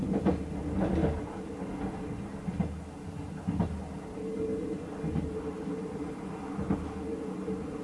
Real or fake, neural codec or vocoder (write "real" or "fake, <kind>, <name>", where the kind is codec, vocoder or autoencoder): real